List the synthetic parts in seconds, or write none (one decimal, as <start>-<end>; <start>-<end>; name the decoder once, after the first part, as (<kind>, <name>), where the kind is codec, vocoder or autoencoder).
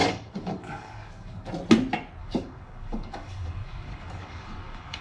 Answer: 0.0-1.5 (codec, DAC); 2.2-5.0